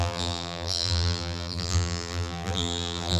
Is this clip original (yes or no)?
no